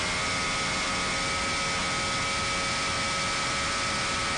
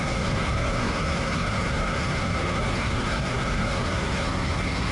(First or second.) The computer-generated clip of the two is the second